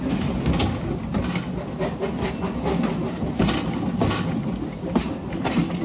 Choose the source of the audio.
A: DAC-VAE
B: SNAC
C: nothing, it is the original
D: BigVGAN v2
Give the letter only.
C